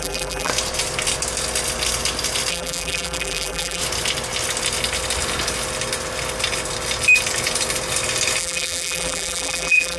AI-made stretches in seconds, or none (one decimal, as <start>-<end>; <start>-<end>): 0.0-0.5; 2.5-3.8; 8.4-10.0